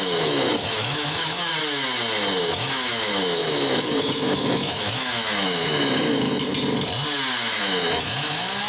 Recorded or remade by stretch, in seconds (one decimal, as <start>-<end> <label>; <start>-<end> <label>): 0.0-1.5 remade; 1.5-2.4 recorded; 2.4-6.5 remade; 6.5-7.6 recorded; 7.6-8.7 remade